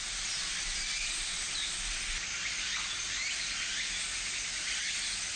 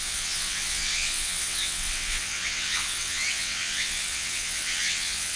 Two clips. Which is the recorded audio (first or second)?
first